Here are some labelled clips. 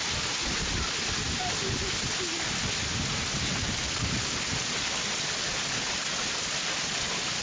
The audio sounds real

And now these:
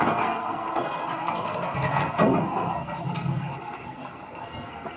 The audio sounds fake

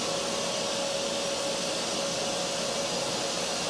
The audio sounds real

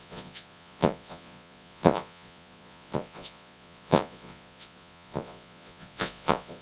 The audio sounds fake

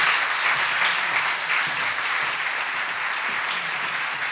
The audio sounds real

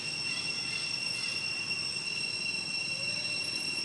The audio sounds real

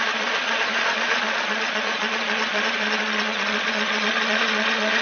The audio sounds fake